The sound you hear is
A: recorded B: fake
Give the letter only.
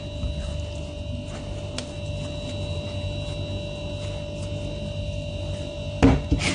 A